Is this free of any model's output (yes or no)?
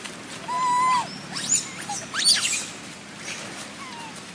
yes